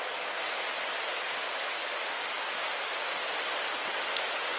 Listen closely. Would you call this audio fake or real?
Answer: real